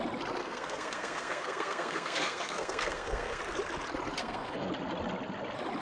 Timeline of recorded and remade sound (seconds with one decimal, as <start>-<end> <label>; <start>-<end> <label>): 0.0-0.4 recorded; 0.4-3.4 remade; 3.4-4.2 recorded; 4.2-4.7 remade; 4.7-5.8 recorded

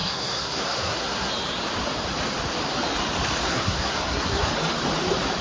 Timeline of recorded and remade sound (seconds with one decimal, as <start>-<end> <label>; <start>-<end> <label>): 0.0-1.3 remade; 1.3-3.4 recorded; 3.4-4.5 remade; 4.5-5.4 recorded

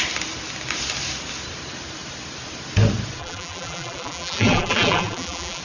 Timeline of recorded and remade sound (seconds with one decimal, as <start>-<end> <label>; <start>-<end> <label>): 0.0-3.2 recorded; 3.2-5.6 remade

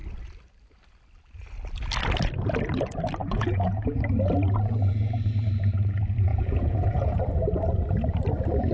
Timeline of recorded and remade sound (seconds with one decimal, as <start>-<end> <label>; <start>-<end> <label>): 0.0-3.2 recorded; 3.2-4.0 remade; 4.0-6.3 recorded; 6.3-7.2 remade; 7.2-8.7 recorded

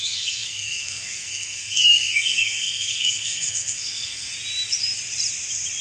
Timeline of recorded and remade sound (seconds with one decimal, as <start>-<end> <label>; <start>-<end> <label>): 0.0-4.3 remade; 4.3-5.8 recorded